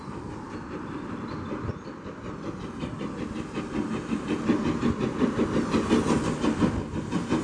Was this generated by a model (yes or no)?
no